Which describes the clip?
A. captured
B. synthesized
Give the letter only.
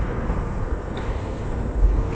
B